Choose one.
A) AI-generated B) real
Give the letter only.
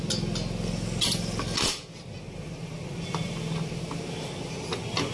B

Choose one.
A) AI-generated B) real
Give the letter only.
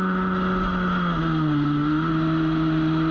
B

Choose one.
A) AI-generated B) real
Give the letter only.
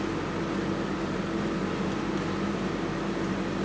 B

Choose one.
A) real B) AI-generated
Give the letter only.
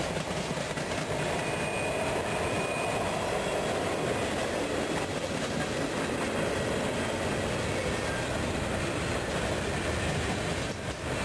A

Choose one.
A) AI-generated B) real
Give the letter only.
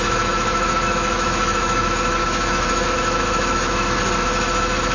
A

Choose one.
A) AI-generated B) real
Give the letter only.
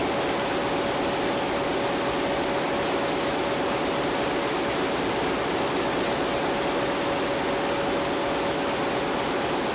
B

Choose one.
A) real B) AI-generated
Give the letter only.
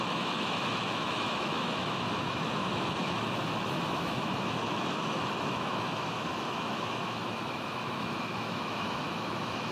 B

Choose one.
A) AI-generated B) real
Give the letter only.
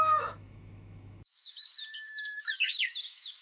A